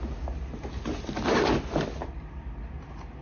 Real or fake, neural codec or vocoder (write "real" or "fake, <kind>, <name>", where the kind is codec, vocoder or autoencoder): real